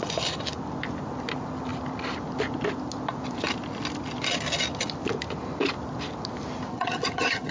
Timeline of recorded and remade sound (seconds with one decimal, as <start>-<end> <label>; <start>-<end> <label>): 0.0-6.7 recorded; 6.7-7.5 remade